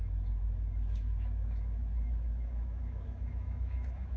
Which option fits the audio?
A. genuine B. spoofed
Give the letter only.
B